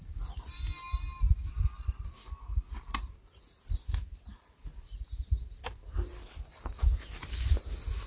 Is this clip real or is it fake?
real